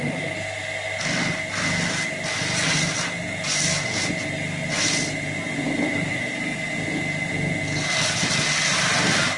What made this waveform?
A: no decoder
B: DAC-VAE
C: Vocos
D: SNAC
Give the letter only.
A